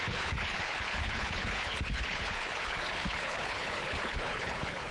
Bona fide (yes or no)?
no